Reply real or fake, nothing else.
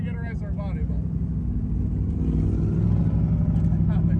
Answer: real